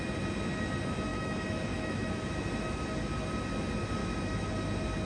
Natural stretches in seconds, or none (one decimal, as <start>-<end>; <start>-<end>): 0.0-1.1; 2.2-4.0; 4.5-5.1